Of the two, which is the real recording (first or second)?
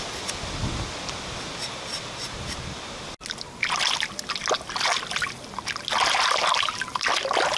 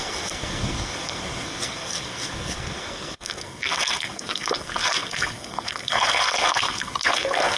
first